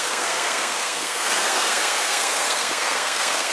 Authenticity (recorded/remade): remade